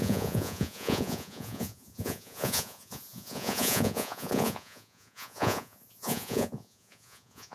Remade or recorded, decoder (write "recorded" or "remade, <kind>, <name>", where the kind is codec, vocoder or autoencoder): remade, vocoder, Vocos